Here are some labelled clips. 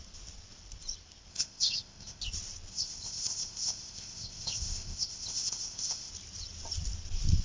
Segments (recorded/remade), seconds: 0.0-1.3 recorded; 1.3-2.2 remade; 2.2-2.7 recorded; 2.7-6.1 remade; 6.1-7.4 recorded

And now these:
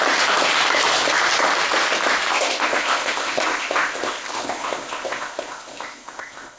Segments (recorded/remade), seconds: 0.0-2.3 recorded; 2.3-6.6 remade

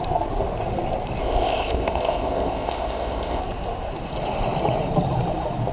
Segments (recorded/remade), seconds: 0.0-1.2 recorded; 1.2-3.4 remade; 3.4-5.7 recorded

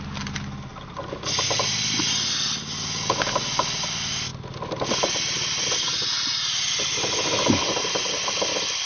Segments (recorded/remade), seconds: 0.0-8.9 recorded

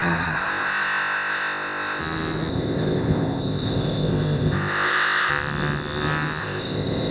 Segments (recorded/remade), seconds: 0.0-2.0 remade; 2.0-2.5 recorded; 2.5-5.3 remade; 5.3-6.4 recorded; 6.4-7.1 remade

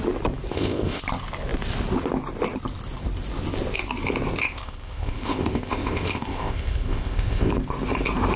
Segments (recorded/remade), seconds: 0.0-0.5 recorded; 0.5-1.0 remade; 1.0-4.4 recorded; 4.4-7.5 remade; 7.5-8.4 recorded

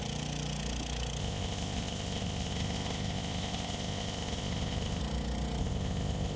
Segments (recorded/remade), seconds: 0.0-1.2 recorded; 1.2-5.0 remade; 5.0-5.6 recorded; 5.6-6.4 remade

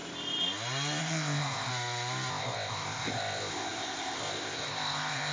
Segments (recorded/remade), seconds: 0.0-1.0 recorded; 1.0-1.7 remade; 1.7-2.3 recorded; 2.3-5.3 remade